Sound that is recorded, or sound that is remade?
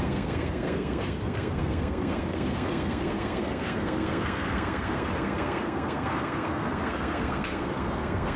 remade